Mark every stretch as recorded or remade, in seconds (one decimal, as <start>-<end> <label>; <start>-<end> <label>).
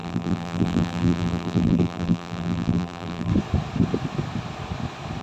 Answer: 0.0-3.3 remade; 3.3-5.2 recorded